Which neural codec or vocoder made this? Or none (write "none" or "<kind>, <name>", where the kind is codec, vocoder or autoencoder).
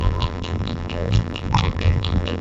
vocoder, BigVGAN v2